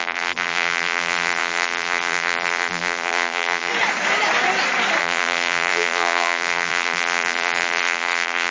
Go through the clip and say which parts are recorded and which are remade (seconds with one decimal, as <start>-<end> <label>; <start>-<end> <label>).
0.0-3.7 remade; 3.7-5.0 recorded; 5.0-8.5 remade